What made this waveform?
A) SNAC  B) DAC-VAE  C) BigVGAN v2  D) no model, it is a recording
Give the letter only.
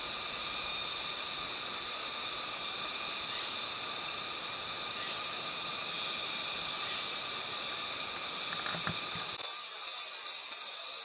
D